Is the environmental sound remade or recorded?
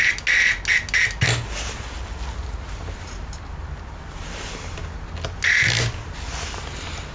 recorded